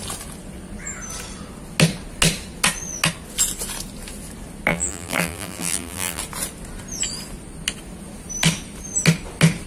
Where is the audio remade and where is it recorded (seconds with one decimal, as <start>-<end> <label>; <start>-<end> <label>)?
0.0-4.7 recorded; 4.7-6.2 remade; 6.2-9.7 recorded